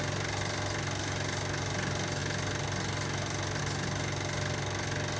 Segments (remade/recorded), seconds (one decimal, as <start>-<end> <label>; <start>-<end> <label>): 0.0-5.2 recorded